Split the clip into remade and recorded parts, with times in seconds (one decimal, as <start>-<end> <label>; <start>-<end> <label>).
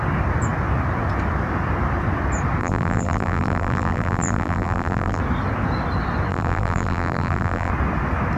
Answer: 0.0-2.6 recorded; 2.6-5.2 remade; 5.2-6.3 recorded; 6.3-7.7 remade; 7.7-8.4 recorded